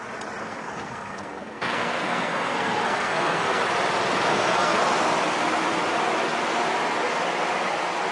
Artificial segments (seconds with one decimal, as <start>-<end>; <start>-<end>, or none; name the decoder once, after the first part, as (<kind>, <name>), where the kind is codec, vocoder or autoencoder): 0.4-3.6 (codec, SNAC); 4.3-4.8